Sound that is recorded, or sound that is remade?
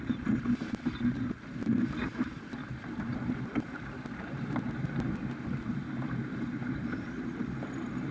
remade